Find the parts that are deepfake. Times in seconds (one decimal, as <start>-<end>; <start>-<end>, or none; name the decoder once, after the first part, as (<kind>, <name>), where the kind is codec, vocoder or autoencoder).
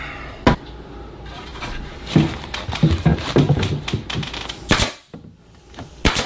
none